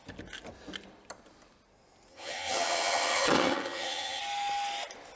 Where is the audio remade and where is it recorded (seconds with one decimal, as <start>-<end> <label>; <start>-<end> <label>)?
0.0-2.1 recorded; 2.1-4.2 remade; 4.2-5.2 recorded